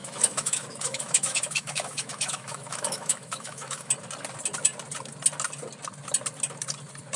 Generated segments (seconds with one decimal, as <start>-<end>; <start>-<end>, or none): 0.0-3.9